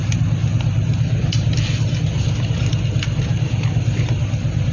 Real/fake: real